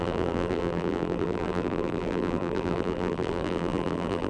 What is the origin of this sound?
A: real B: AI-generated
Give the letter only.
B